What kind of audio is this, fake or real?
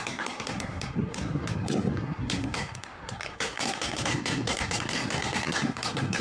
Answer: fake